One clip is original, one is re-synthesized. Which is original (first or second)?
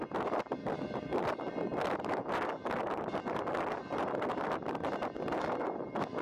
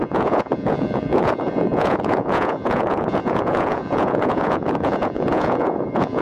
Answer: first